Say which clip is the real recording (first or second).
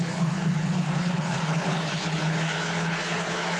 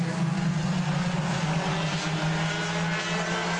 second